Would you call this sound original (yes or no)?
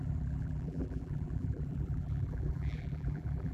no